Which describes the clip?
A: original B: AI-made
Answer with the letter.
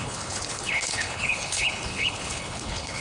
B